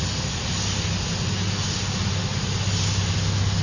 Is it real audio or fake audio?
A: real